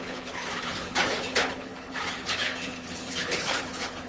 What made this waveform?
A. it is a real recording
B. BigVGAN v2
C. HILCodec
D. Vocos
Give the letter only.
C